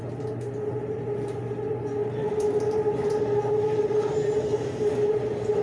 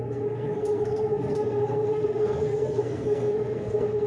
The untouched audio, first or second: first